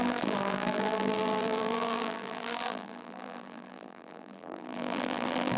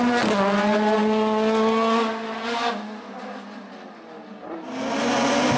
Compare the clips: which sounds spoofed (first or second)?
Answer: first